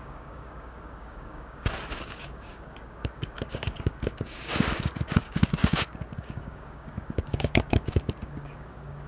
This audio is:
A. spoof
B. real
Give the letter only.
A